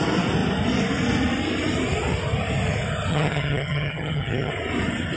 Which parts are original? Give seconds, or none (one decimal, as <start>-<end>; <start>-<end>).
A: 0.0-3.1; 4.5-5.2